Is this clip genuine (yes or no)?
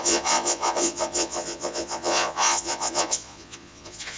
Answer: no